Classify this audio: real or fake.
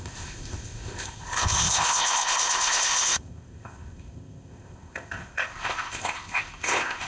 fake